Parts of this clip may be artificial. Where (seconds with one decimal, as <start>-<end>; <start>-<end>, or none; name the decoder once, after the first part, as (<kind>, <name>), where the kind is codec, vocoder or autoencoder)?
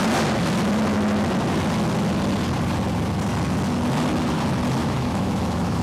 4.8-5.8 (autoencoder, DAC-VAE)